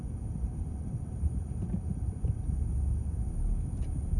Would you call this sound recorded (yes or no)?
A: yes